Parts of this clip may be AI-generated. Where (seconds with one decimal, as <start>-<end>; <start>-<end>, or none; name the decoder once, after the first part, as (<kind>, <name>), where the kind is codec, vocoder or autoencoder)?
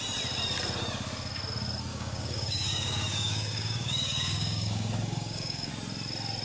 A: 1.9-5.7 (codec, DAC)